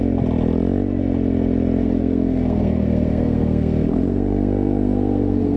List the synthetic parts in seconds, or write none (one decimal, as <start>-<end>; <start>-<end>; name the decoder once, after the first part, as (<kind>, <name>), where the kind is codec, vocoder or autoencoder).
1.8-5.6 (codec, SNAC)